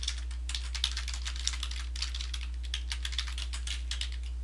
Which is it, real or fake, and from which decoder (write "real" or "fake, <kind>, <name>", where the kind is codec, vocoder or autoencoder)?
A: real